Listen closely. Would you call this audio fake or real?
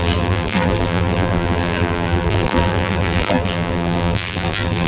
fake